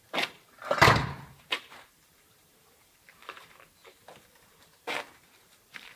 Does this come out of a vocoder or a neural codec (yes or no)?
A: yes